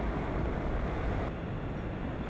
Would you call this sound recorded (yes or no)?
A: yes